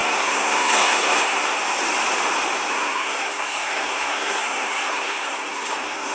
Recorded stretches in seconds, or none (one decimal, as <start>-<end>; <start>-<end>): 1.6-2.7